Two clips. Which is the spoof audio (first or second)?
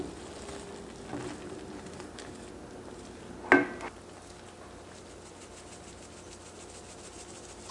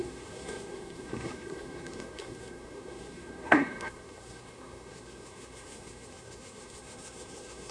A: second